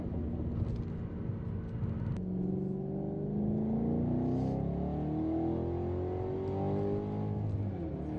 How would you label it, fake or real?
real